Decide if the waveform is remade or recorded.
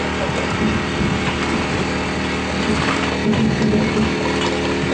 recorded